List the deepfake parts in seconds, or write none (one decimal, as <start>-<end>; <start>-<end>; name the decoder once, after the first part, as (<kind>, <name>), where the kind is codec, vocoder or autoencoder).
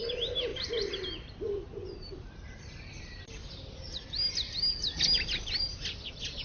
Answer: none